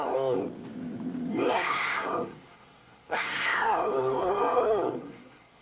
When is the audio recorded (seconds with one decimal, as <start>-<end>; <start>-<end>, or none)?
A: 0.4-1.3